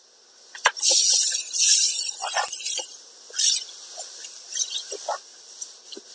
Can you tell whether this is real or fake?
real